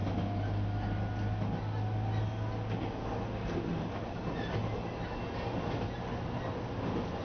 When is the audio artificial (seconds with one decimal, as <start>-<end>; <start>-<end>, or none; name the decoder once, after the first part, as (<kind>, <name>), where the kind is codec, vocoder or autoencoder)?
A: none